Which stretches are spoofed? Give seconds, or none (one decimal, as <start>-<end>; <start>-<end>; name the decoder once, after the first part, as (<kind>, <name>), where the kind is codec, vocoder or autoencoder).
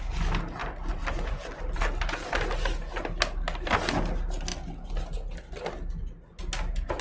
0.6-1.8 (vocoder, BigVGAN v2)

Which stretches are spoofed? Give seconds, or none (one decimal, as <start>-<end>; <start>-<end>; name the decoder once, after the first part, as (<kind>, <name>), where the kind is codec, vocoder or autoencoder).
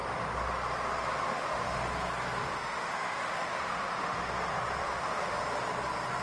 1.3-1.8 (autoencoder, DAC-VAE); 2.4-4.2; 4.8-5.4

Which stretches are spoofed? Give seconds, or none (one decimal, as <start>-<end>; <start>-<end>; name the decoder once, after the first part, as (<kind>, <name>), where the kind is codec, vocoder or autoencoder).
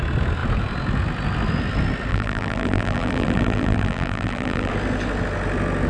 2.1-4.7 (vocoder, BigVGAN v2)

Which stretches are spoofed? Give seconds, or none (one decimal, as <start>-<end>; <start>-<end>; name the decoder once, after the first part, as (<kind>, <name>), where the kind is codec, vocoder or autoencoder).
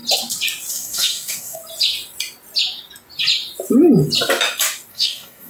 0.7-1.6 (codec, DAC); 4.9-5.5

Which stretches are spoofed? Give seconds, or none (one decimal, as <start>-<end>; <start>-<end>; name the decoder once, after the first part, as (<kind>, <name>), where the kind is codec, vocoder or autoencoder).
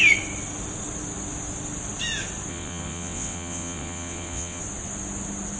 2.5-4.6 (vocoder, WaveNeXt)